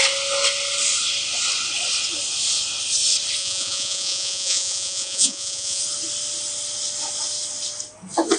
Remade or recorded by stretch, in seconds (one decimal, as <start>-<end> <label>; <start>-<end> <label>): 0.0-3.4 recorded; 3.4-5.8 remade; 5.8-8.4 recorded